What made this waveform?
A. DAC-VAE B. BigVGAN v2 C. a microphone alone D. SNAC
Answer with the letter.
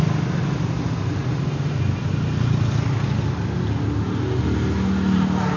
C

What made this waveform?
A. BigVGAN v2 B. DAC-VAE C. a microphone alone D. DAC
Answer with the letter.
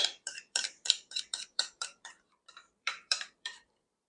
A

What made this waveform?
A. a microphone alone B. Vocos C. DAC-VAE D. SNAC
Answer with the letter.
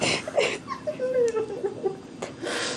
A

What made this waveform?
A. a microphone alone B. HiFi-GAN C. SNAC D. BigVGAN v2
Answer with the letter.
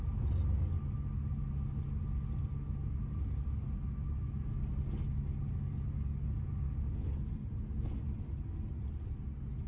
A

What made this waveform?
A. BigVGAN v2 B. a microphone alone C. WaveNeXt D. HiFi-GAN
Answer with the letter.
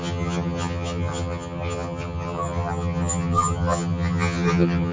D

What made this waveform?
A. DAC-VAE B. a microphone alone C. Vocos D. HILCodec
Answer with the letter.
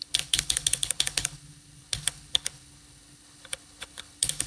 D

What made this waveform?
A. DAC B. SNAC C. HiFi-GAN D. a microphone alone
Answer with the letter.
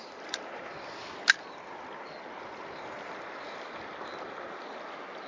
D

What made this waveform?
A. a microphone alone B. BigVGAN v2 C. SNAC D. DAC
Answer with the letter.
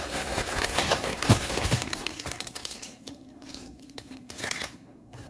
C